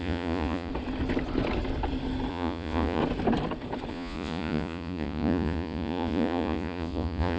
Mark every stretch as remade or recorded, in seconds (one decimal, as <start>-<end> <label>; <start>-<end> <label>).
0.0-0.7 remade; 0.7-2.3 recorded; 2.3-3.0 remade; 3.0-3.9 recorded; 3.9-7.4 remade